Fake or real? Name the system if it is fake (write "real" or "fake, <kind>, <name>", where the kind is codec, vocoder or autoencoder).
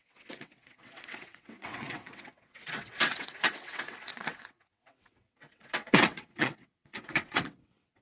fake, vocoder, WaveNeXt